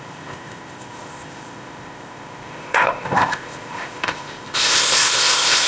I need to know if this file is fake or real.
fake